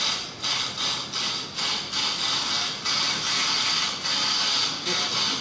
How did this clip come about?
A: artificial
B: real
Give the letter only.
B